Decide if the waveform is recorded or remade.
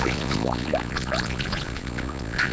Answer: remade